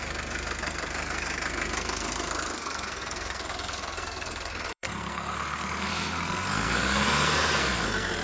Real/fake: fake